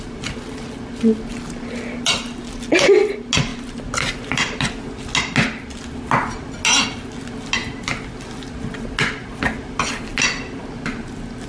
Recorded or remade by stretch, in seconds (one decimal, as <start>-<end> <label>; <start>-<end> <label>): 0.0-11.5 recorded